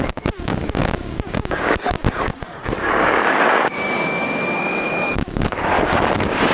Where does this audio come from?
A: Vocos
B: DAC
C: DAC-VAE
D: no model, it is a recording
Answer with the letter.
B